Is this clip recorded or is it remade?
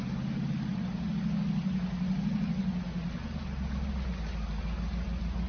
recorded